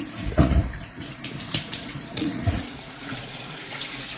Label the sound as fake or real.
fake